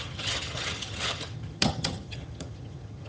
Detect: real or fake fake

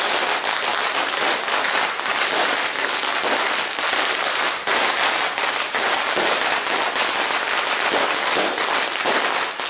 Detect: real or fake real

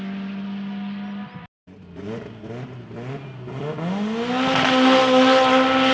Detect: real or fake real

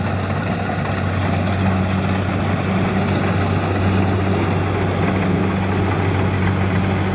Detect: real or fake real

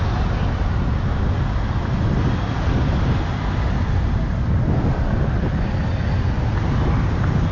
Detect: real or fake real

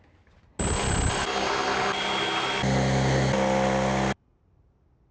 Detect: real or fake real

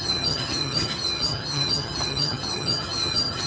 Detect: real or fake fake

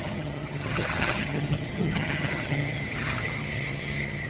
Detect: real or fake fake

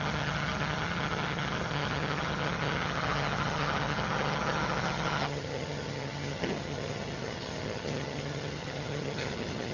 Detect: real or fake fake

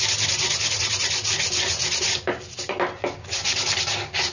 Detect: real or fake real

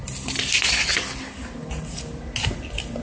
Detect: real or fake real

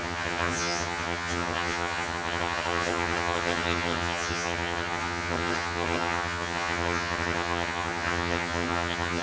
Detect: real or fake fake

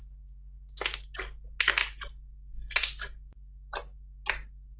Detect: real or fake real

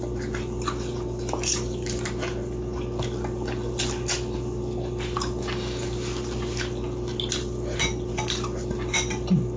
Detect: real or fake real